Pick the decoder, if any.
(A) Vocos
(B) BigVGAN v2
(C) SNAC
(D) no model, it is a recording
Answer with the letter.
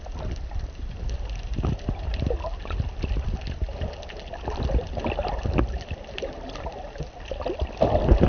D